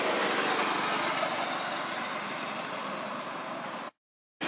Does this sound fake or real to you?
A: real